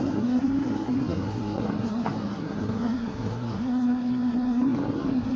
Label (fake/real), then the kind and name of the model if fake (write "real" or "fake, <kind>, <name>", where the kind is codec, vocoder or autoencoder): fake, codec, SNAC